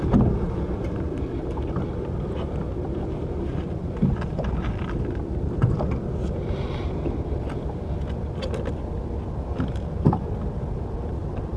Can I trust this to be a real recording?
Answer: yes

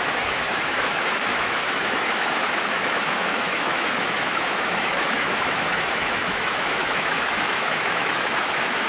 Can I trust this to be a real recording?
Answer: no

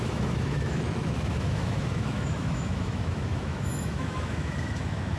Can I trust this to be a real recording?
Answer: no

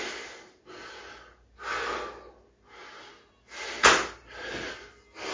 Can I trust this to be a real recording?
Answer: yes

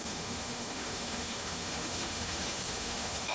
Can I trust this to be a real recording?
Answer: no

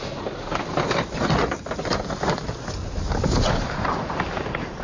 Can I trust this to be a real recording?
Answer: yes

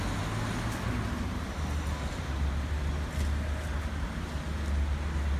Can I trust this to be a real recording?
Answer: yes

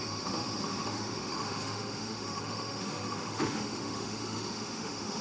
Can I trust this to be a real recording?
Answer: no